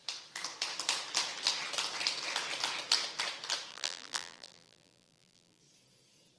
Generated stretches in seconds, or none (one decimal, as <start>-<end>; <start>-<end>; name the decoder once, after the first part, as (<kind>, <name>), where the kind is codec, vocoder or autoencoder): 3.7-5.6 (vocoder, BigVGAN v2)